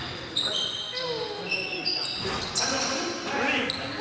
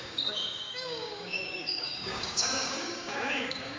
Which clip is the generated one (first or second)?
second